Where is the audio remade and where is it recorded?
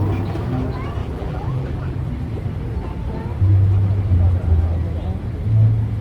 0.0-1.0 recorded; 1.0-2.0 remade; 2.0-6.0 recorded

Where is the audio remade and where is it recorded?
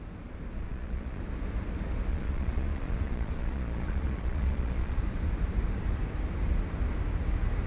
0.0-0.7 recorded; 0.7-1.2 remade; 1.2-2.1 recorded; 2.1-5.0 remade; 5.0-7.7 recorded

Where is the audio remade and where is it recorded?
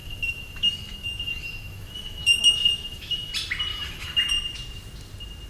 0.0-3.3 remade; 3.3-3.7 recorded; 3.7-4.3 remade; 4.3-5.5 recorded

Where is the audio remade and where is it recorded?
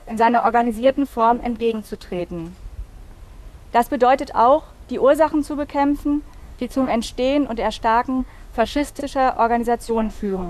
0.0-2.2 remade; 2.2-6.4 recorded; 6.4-6.9 remade; 6.9-8.2 recorded; 8.2-9.0 remade; 9.0-9.9 recorded; 9.9-10.5 remade